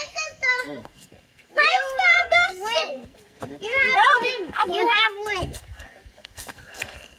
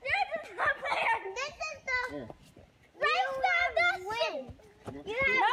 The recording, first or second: second